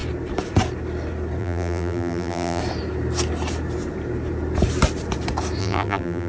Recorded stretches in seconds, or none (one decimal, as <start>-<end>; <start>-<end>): 0.0-1.4; 2.6-5.6